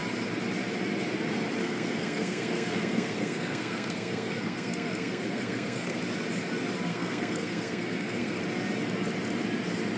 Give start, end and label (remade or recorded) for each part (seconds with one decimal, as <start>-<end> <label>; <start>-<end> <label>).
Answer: 0.0-1.6 recorded; 1.6-6.0 remade; 6.0-6.9 recorded; 6.9-8.4 remade; 8.4-10.0 recorded